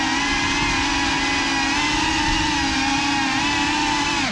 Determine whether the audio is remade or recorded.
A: recorded